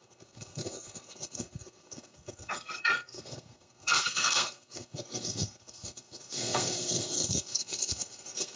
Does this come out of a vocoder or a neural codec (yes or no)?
yes